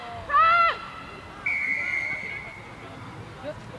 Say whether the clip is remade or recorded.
recorded